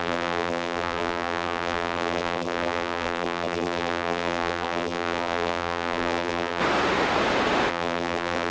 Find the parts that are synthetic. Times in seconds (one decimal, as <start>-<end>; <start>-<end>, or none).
0.0-6.6; 7.7-8.5